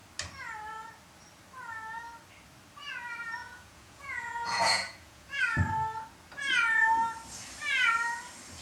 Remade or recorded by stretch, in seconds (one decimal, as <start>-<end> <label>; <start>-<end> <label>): 0.0-3.4 recorded; 3.4-5.4 remade; 5.4-8.6 recorded